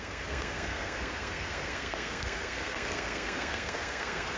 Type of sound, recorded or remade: remade